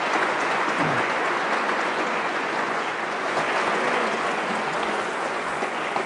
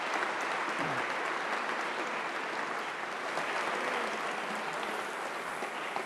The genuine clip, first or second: second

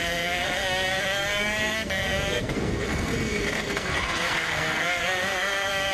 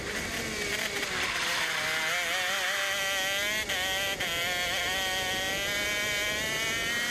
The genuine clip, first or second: second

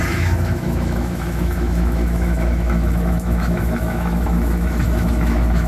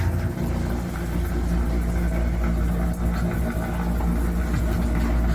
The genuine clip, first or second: second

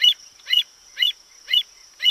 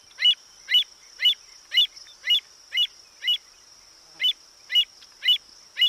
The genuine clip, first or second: second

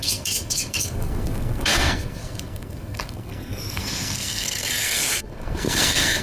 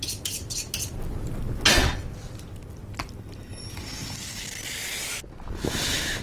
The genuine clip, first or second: second